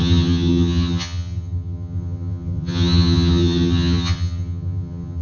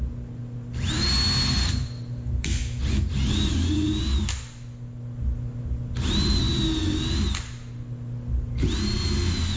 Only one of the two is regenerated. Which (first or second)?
first